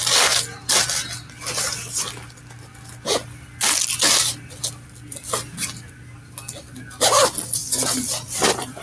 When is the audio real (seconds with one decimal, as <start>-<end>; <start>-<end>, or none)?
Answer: 0.0-7.6